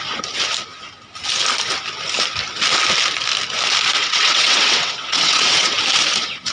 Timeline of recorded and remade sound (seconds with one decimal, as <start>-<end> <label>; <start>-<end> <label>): 0.0-4.0 recorded; 4.0-5.8 remade; 5.8-6.5 recorded